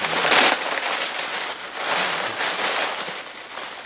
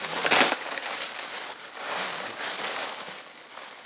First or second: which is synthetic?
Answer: second